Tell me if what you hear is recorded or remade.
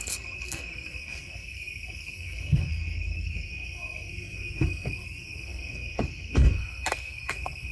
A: remade